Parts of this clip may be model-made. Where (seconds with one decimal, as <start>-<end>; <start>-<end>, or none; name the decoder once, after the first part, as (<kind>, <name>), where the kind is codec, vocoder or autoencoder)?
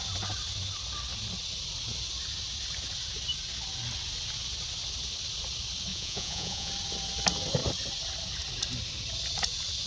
5.9-6.7 (vocoder, Vocos)